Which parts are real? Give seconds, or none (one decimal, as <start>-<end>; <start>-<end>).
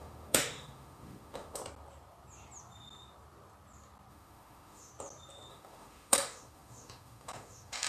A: 1.6-4.1; 4.9-5.5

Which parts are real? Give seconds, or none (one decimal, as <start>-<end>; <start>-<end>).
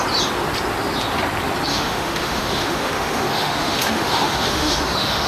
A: 0.0-1.7